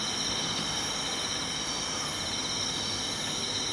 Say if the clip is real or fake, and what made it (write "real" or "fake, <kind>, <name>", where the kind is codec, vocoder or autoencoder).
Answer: real